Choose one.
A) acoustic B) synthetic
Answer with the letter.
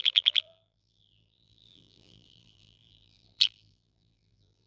B